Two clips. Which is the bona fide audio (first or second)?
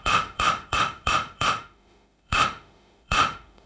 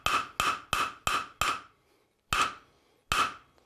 second